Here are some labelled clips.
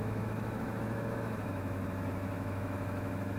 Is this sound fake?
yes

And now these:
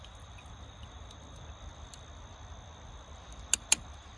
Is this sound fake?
no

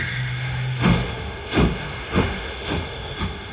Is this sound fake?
yes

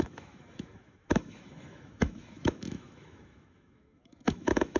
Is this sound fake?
yes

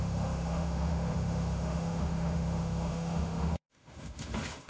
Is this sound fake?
yes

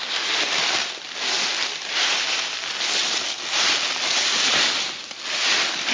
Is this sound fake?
no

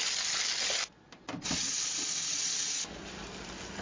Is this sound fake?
no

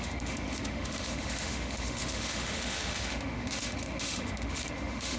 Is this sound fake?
yes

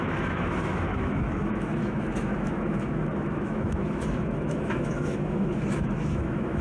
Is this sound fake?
yes